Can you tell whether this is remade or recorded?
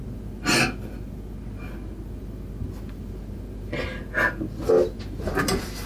recorded